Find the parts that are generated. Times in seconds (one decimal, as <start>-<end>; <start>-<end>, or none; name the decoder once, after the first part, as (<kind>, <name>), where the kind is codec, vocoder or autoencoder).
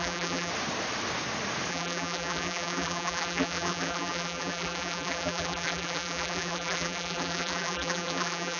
0.0-0.5 (vocoder, BigVGAN v2); 1.7-8.6